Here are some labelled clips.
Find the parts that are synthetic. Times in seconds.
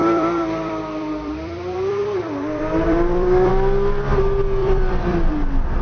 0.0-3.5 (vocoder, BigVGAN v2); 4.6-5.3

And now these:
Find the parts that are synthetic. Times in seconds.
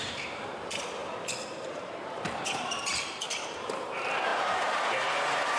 0.0-5.6 (vocoder, BigVGAN v2)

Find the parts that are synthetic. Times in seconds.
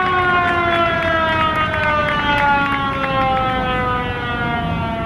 none